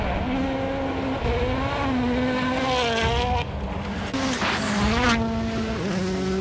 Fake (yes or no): no